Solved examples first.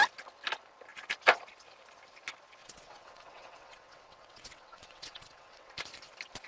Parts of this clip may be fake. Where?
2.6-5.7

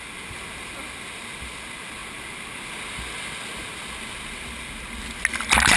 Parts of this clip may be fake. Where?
none

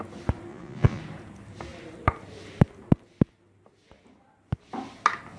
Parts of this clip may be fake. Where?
0.5-1.0

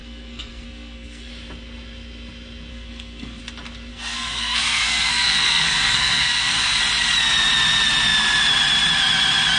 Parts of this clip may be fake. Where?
0.0-1.3; 2.7-3.4; 3.9-6.8

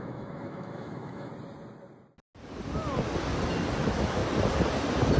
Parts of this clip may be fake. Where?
0.0-1.3; 3.8-4.2